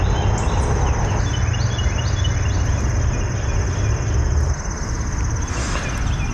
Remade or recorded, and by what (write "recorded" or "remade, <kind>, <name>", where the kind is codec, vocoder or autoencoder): recorded